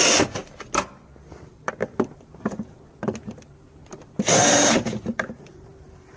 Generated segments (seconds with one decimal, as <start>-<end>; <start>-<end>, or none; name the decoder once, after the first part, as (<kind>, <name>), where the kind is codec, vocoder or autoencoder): 0.0-0.4 (vocoder, BigVGAN v2); 1.3-3.8; 4.5-6.2